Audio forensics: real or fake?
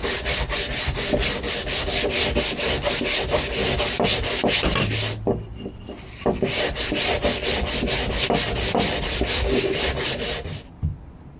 real